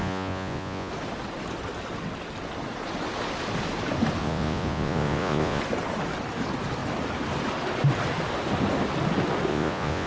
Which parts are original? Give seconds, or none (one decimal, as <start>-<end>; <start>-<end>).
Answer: 0.9-4.2; 5.6-9.5